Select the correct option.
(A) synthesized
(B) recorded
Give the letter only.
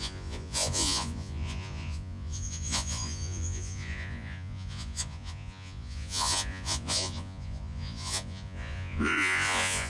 A